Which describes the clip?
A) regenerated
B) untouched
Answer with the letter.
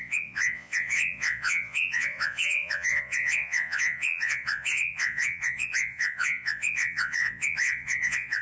A